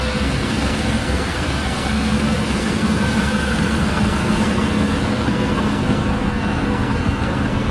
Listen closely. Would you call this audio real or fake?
fake